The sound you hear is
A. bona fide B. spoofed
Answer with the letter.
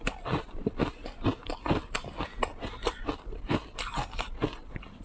A